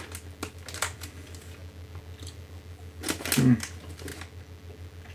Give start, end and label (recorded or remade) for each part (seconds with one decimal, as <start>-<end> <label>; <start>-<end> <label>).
0.0-5.1 recorded